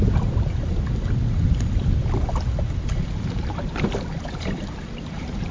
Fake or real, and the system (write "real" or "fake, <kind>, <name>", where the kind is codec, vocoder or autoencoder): real